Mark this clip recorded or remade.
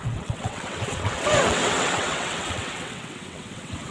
remade